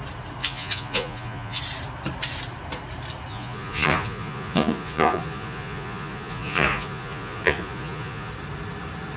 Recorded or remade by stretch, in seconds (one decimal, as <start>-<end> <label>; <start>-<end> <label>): 0.0-0.4 recorded; 0.4-1.6 remade; 1.6-3.3 recorded; 3.3-8.3 remade; 8.3-9.2 recorded